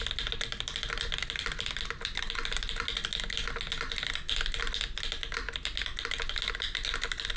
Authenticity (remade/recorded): recorded